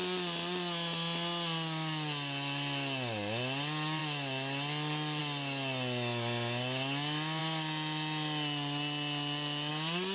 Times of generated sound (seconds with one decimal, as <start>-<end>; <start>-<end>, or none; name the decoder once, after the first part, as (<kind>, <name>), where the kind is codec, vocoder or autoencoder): none